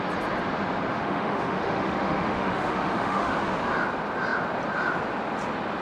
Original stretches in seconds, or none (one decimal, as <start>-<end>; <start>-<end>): 0.0-0.9; 3.3-5.8